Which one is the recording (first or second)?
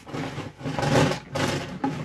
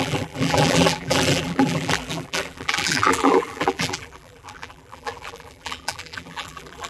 first